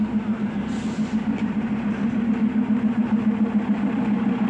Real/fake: real